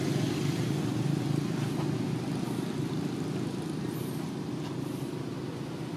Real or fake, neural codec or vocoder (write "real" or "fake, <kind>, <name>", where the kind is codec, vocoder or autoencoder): real